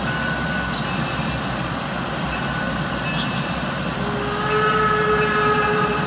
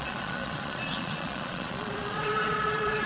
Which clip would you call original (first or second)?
first